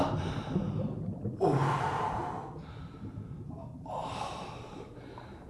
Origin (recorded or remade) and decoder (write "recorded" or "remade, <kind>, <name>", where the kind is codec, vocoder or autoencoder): remade, vocoder, BigVGAN v2